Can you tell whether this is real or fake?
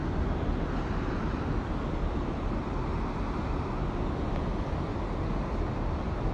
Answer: real